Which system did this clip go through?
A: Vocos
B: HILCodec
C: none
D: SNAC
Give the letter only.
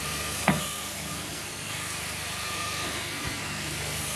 D